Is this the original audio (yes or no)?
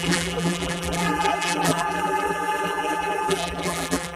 no